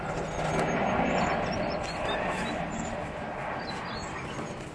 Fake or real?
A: real